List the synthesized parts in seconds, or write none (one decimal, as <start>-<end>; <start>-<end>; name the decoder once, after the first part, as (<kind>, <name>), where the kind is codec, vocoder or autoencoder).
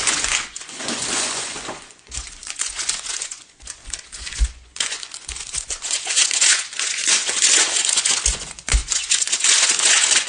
0.0-10.3 (vocoder, Vocos)